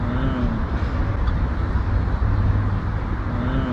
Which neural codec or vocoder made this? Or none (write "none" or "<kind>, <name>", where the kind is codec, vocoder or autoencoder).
none